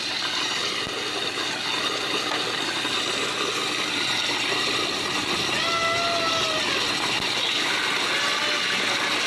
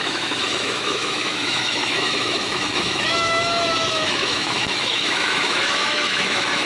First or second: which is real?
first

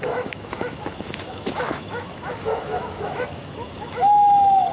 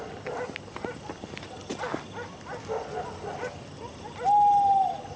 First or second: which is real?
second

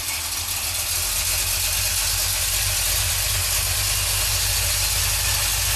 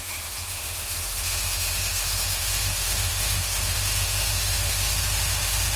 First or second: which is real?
first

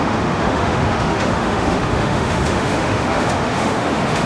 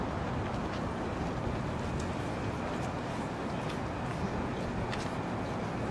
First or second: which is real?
second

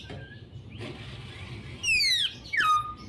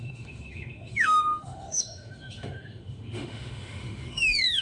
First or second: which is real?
first